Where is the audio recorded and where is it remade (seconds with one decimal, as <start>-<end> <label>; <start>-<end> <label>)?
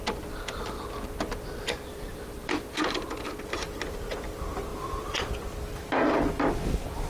0.0-1.9 recorded; 1.9-2.7 remade; 2.7-4.7 recorded; 4.7-5.3 remade; 5.3-7.1 recorded